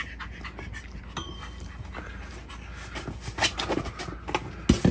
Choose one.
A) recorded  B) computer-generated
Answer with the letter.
A